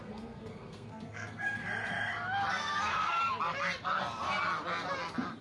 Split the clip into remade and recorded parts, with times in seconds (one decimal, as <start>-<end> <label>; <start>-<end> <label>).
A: 0.0-1.6 remade; 1.6-2.5 recorded; 2.5-3.2 remade; 3.2-5.4 recorded